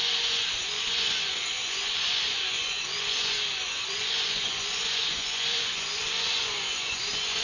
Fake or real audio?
fake